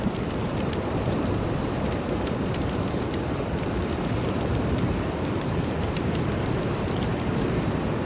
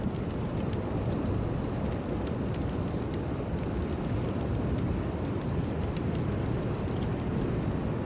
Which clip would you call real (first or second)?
second